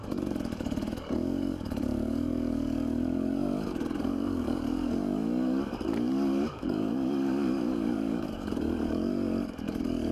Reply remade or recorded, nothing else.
remade